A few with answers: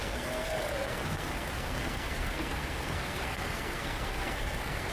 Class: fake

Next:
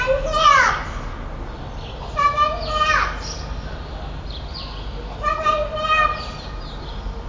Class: real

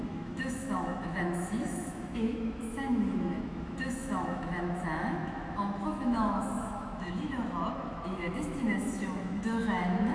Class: fake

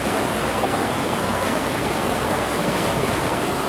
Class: fake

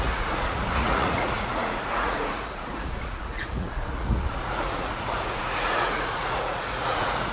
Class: fake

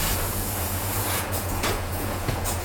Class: fake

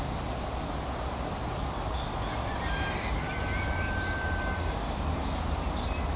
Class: real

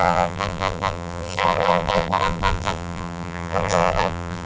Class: fake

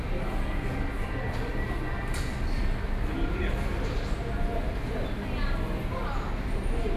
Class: real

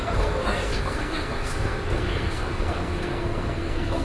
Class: fake